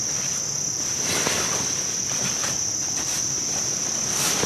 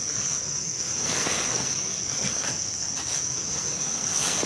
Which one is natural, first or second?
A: first